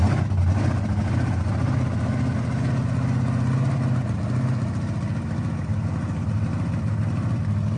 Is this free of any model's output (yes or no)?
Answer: yes